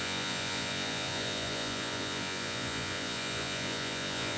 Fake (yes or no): yes